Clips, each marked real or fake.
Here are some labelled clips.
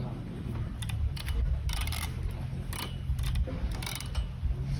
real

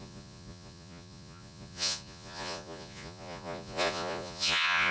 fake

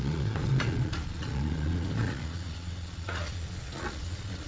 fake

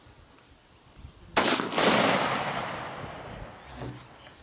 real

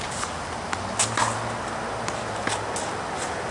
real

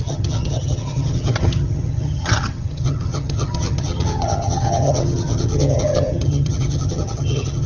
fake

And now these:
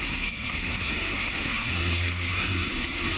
fake